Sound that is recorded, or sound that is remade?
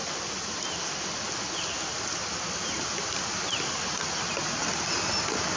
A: recorded